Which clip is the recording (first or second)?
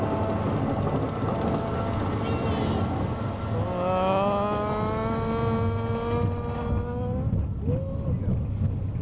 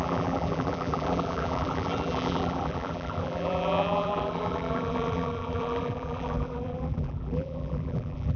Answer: first